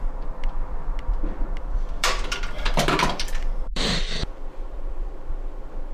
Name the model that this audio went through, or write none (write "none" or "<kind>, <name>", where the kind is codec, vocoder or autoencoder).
vocoder, BigVGAN v2